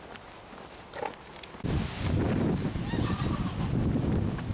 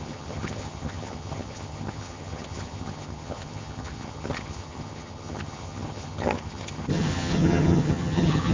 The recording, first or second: first